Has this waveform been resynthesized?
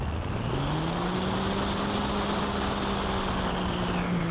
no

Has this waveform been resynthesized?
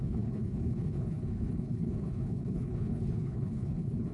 yes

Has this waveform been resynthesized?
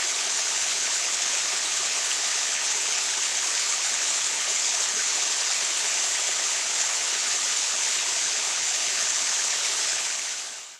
yes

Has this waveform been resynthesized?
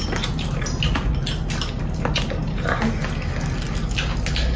no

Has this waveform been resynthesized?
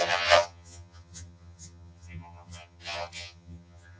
yes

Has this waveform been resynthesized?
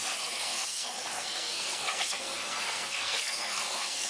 yes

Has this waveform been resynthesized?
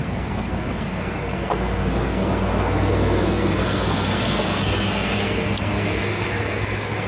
yes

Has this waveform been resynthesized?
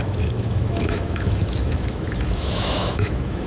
yes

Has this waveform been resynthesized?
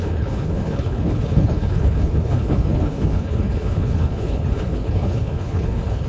yes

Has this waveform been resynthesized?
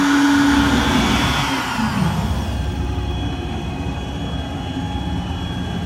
no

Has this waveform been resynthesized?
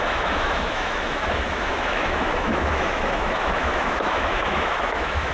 yes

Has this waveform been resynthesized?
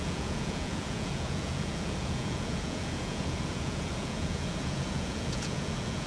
yes